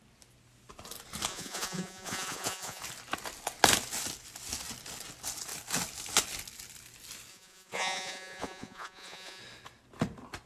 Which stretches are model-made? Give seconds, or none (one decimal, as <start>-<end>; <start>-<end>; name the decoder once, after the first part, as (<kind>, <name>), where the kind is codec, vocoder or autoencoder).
1.3-2.8 (vocoder, Vocos); 7.3-9.4